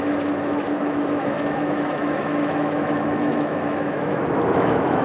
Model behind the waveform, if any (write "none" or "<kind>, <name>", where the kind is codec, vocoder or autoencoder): autoencoder, DAC-VAE